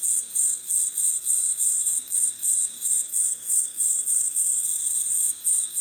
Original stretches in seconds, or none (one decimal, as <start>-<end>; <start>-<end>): none

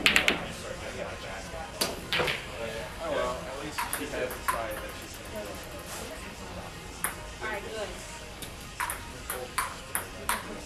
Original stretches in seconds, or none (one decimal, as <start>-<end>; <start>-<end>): 0.0-1.9; 3.7-7.7; 8.7-9.1; 9.9-10.7